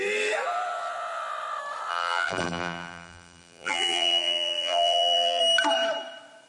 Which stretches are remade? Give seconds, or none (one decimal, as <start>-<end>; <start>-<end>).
1.9-5.4